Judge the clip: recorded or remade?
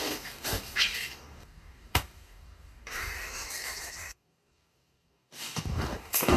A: remade